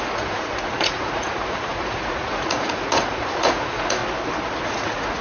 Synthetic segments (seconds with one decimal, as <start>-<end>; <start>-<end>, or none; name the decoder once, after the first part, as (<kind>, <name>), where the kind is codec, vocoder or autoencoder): 0.0-4.0 (vocoder, Vocos); 4.6-5.2